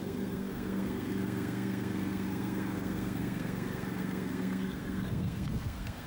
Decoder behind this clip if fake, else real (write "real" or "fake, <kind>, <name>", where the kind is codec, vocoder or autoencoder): fake, codec, SNAC